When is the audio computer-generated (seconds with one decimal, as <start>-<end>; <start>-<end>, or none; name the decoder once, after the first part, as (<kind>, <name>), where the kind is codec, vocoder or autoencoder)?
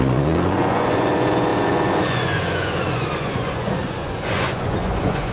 0.0-5.3 (vocoder, Vocos)